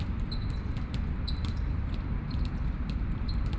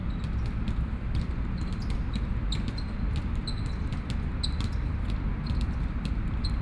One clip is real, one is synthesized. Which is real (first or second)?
second